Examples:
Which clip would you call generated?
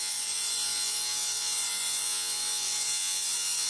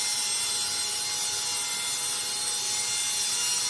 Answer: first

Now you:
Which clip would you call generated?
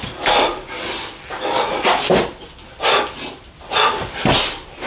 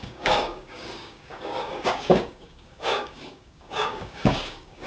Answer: second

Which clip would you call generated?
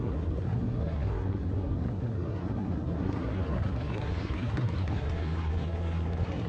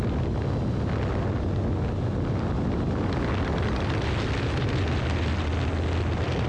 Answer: first